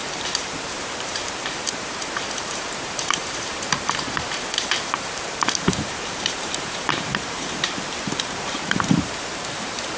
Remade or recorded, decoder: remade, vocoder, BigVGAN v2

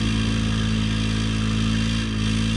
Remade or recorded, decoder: recorded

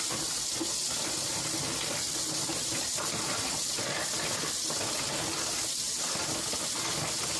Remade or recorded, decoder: recorded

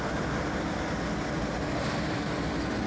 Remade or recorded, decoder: recorded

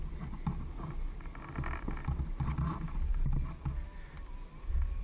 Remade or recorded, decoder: recorded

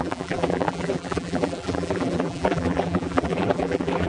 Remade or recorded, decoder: remade, vocoder, BigVGAN v2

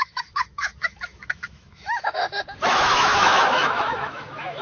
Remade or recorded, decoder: remade, autoencoder, DAC-VAE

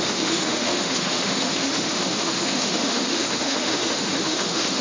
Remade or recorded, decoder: remade, autoencoder, DAC-VAE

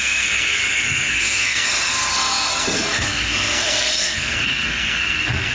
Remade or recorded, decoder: remade, codec, SNAC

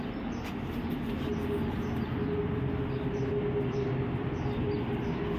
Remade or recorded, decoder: recorded